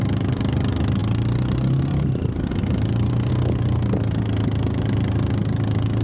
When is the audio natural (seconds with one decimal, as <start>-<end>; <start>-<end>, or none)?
0.0-6.0